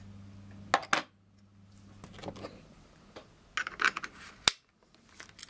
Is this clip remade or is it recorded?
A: recorded